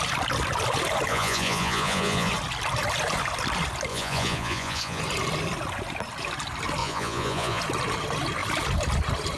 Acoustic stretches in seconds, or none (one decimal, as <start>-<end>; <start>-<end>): 0.0-1.1; 2.3-3.9; 5.0-6.8; 7.6-9.4